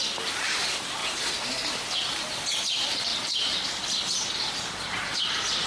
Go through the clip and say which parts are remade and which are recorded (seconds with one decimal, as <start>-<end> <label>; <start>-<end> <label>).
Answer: 0.0-3.1 recorded; 3.1-5.3 remade; 5.3-5.7 recorded